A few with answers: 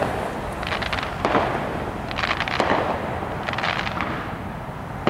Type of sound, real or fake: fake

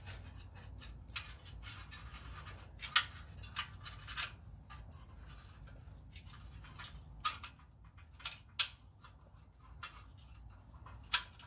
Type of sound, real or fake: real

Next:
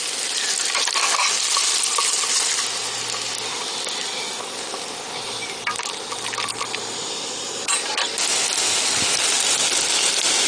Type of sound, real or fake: real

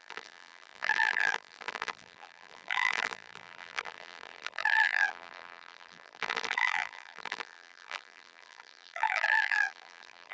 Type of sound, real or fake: fake